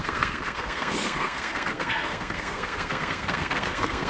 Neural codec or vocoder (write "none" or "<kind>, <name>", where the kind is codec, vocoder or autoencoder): codec, SNAC